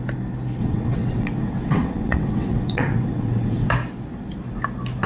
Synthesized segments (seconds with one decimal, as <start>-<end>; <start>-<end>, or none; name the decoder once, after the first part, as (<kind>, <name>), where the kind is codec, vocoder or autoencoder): 0.6-3.7 (vocoder, WaveNeXt)